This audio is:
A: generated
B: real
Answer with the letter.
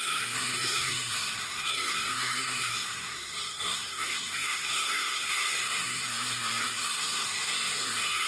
A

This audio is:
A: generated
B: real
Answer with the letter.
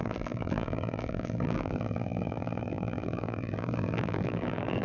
A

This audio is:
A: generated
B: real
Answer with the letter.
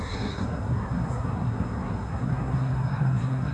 A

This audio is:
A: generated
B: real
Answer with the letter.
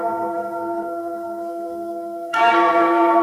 A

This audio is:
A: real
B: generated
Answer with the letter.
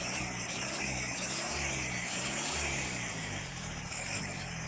B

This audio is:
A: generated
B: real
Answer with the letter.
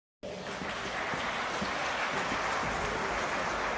B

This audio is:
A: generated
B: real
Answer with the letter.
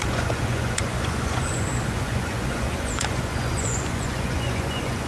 A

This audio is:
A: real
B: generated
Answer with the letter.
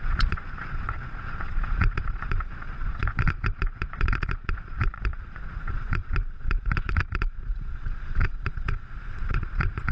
B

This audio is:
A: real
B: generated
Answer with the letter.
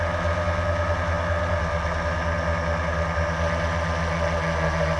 A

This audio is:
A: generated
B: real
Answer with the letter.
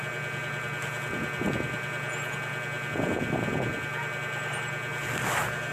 B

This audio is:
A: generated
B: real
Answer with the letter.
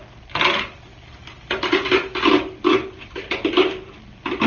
B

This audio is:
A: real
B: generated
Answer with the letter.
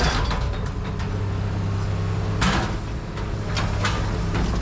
A